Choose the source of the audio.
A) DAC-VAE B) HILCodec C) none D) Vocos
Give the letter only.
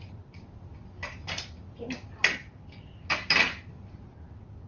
C